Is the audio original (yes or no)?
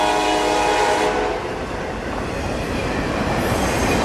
yes